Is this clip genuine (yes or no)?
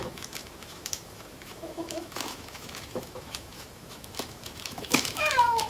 no